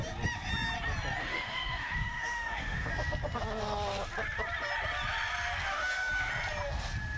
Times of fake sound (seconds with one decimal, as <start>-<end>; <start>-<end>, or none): 1.2-2.9; 5.7-6.3